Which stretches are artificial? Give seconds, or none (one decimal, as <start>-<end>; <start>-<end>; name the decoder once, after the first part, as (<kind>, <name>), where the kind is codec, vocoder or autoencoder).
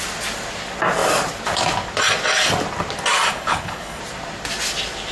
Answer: 3.3-4.0 (codec, HILCodec)